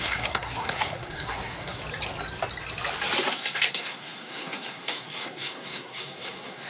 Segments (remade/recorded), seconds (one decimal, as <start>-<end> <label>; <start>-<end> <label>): 0.0-1.8 remade; 1.8-3.3 recorded; 3.3-6.7 remade